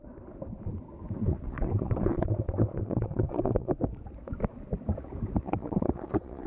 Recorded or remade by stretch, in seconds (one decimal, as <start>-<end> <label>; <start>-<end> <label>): 0.0-1.2 recorded; 1.2-3.7 remade; 3.7-5.4 recorded; 5.4-6.5 remade